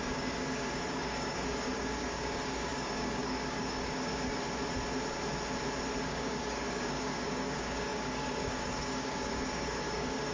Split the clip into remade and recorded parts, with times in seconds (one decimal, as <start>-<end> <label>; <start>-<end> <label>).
0.0-4.1 remade; 4.1-6.0 recorded; 6.0-10.3 remade